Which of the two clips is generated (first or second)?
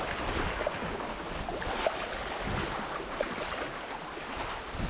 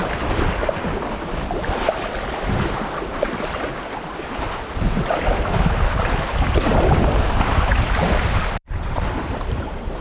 second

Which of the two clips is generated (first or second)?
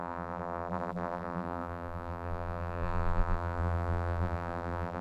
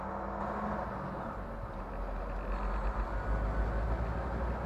first